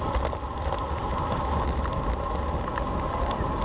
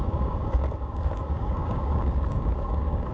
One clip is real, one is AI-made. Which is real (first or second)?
first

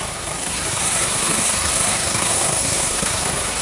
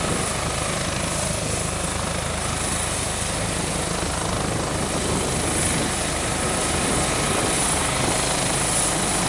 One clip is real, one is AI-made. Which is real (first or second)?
second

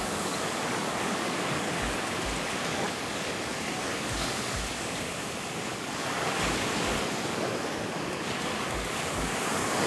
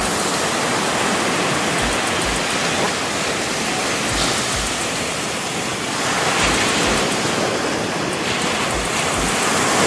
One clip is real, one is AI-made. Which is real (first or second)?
second